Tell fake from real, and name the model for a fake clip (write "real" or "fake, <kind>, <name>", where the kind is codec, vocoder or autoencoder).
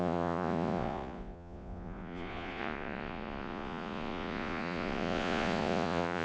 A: fake, vocoder, Vocos